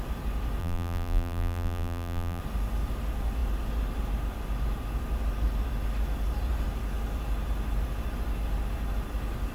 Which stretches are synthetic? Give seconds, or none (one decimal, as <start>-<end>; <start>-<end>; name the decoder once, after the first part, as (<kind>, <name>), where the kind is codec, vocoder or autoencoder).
0.6-2.4 (vocoder, BigVGAN v2)